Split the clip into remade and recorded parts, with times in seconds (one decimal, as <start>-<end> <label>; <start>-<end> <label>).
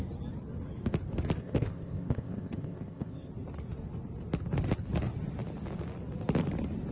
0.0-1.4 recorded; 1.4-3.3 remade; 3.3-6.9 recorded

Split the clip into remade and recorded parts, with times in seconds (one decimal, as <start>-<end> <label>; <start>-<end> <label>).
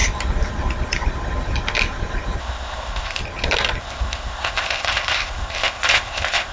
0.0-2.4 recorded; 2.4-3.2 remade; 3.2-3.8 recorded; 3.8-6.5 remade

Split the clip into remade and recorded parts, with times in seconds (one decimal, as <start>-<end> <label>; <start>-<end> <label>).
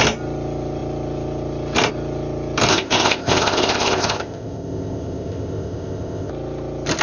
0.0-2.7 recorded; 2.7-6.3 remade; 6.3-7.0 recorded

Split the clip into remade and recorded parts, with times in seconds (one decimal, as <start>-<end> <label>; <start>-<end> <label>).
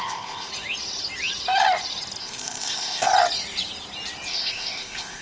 0.0-0.5 remade; 0.5-2.2 recorded; 2.2-3.1 remade; 3.1-4.3 recorded; 4.3-5.2 remade